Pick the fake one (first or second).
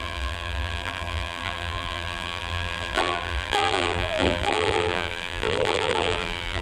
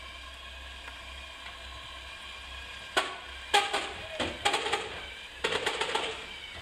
first